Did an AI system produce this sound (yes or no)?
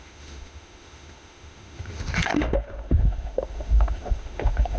yes